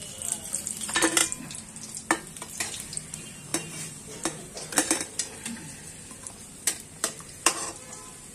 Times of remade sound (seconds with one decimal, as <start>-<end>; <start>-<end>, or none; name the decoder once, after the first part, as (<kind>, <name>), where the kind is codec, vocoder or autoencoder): 0.0-1.2 (vocoder, BigVGAN v2); 2.6-8.3